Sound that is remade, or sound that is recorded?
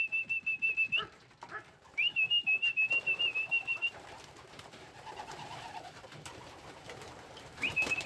remade